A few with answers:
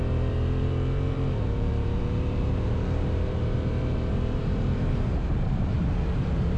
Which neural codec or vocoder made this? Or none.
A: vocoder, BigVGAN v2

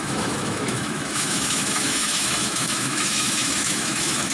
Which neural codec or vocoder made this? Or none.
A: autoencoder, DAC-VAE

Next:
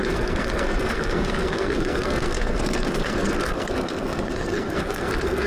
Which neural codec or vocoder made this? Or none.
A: codec, SNAC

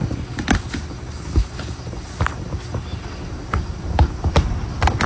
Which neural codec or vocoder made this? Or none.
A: none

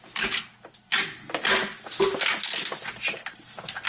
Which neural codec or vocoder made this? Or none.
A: none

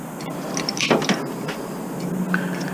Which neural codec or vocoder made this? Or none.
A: none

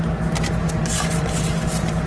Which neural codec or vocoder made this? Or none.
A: none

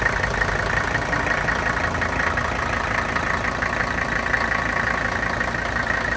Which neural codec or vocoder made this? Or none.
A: none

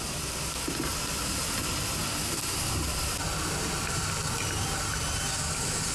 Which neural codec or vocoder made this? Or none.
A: none